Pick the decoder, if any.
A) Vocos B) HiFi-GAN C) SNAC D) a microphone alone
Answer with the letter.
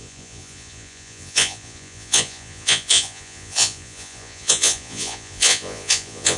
A